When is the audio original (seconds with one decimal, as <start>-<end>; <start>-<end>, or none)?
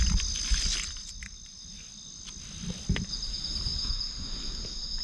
0.0-1.5; 2.6-3.7; 4.3-5.0